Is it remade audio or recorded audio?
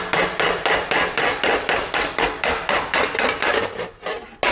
recorded